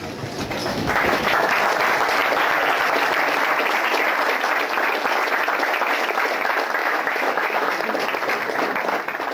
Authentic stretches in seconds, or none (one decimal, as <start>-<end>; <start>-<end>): 0.0-0.6; 1.5-6.8; 7.7-9.3